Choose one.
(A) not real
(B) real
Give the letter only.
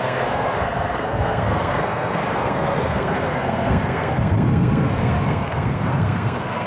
A